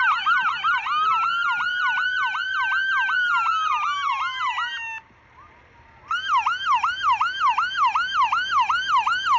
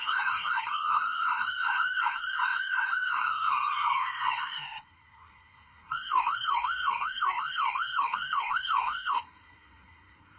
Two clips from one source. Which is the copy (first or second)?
second